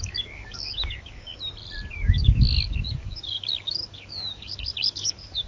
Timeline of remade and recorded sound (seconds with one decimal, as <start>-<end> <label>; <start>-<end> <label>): 0.0-1.3 remade; 1.3-1.9 recorded; 1.9-5.5 remade